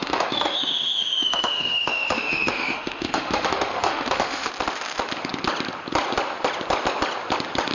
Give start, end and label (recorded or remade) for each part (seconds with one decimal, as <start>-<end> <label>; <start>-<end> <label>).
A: 0.0-4.5 remade; 4.5-7.7 recorded